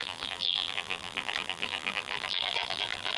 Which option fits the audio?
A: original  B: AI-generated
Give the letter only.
B